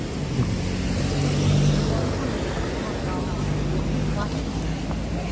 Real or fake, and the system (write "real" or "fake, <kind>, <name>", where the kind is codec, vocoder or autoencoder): real